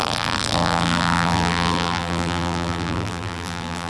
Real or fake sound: fake